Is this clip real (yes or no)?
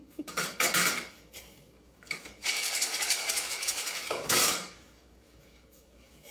no